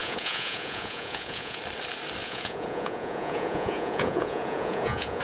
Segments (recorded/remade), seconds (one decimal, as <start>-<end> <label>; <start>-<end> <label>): 0.0-1.6 remade; 1.6-2.2 recorded; 2.2-5.2 remade